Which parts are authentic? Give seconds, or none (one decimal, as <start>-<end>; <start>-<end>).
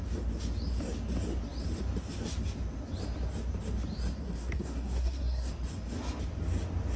0.0-4.2; 5.5-7.0